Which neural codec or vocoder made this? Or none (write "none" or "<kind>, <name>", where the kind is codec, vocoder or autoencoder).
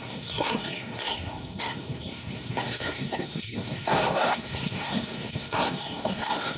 codec, SNAC